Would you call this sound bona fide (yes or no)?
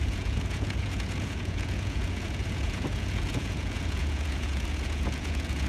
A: no